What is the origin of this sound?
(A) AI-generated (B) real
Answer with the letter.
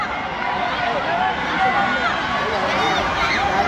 B